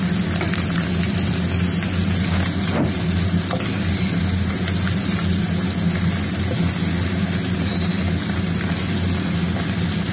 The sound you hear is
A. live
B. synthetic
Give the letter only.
A